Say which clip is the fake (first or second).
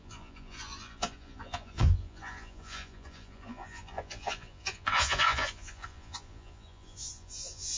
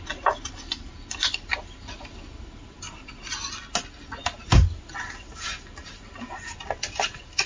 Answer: first